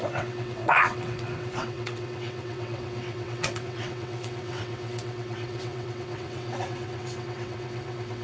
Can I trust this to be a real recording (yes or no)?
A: no